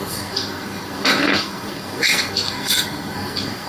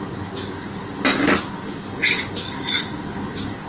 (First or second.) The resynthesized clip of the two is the first